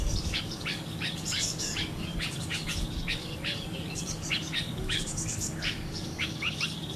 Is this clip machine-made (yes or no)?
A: yes